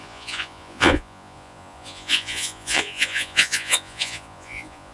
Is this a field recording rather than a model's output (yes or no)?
no